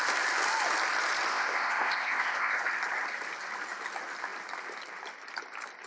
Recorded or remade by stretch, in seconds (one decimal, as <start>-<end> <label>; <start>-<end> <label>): 0.0-1.3 recorded; 1.3-2.6 remade; 2.6-5.9 recorded